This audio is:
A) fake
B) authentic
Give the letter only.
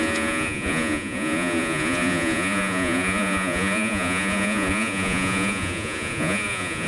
A